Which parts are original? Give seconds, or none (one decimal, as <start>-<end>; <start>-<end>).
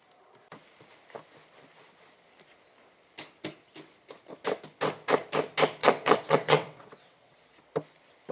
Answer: 0.0-5.8; 7.4-8.3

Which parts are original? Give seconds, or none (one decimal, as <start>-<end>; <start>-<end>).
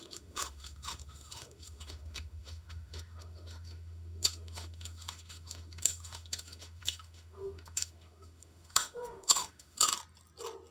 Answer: 9.9-10.7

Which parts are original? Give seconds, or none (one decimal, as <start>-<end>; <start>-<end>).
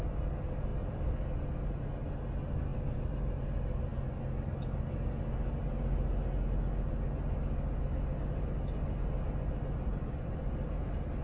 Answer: 0.0-0.7; 1.3-9.9; 10.5-11.2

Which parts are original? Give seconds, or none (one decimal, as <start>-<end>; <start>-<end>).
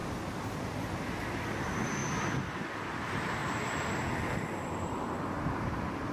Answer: 0.0-1.6; 2.0-2.5; 3.4-4.2